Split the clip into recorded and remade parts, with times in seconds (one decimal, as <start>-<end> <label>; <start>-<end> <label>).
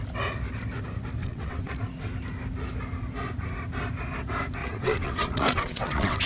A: 0.0-1.2 recorded; 1.2-1.7 remade; 1.7-4.6 recorded; 4.6-6.3 remade